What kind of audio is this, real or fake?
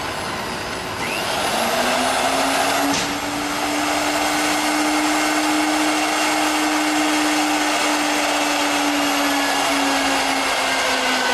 real